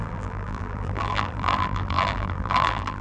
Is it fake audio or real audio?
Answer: fake